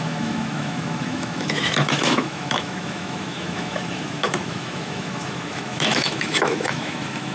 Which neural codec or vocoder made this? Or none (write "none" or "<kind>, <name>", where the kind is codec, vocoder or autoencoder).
autoencoder, DAC-VAE